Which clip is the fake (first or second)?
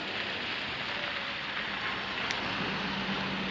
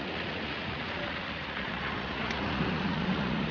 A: second